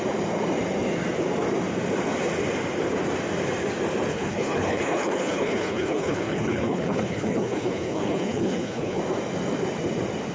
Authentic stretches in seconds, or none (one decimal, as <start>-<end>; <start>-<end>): 0.0-4.1; 9.0-10.3